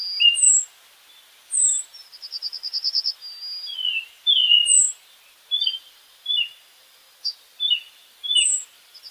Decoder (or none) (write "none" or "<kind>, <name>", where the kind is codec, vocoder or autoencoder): none